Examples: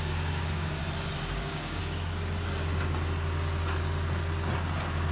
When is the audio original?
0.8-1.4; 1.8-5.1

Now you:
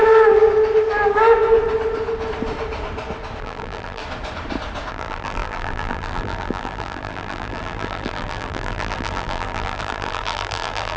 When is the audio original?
0.0-3.4; 4.0-4.9